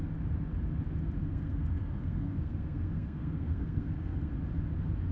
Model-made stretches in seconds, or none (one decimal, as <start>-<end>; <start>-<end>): 1.2-4.3